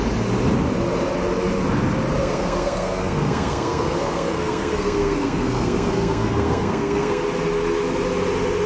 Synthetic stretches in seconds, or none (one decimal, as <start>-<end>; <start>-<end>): 2.2-7.2